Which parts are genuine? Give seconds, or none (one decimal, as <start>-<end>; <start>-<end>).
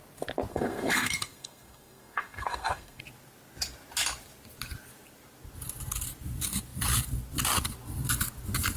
0.0-0.5; 3.0-8.8